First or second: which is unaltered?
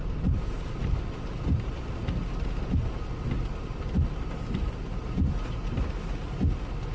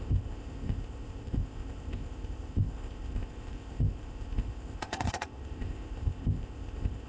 first